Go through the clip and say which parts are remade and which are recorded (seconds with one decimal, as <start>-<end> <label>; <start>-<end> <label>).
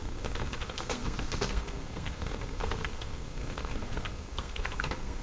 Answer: 0.0-5.2 remade